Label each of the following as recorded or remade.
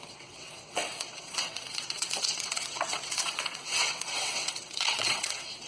remade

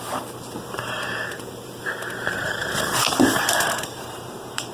remade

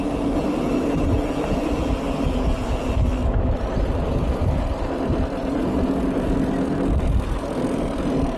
recorded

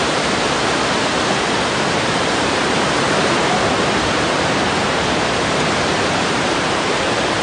remade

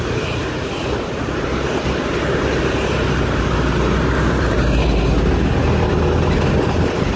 recorded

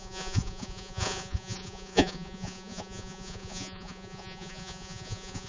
remade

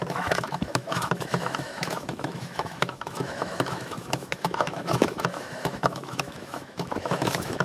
remade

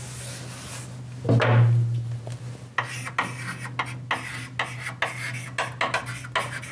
recorded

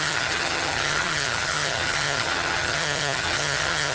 remade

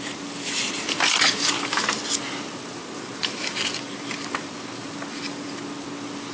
recorded